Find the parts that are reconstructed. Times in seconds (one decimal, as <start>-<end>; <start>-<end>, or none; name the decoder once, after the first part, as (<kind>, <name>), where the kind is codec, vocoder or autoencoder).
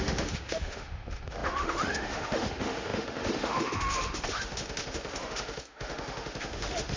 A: 0.0-7.0 (autoencoder, DAC-VAE)